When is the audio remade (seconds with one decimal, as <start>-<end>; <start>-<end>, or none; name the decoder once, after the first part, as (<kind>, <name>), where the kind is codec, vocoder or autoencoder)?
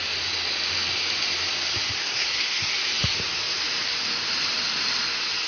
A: 2.0-2.7 (codec, SNAC)